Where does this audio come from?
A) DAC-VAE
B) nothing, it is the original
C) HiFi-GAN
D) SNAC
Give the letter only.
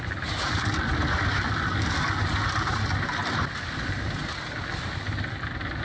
B